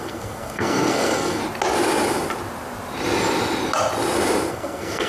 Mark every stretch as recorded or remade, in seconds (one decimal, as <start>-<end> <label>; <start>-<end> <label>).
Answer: 0.0-1.4 remade; 1.4-4.5 recorded; 4.5-5.1 remade